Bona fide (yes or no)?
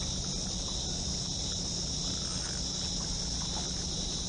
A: yes